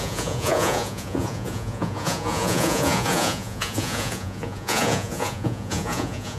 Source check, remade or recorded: remade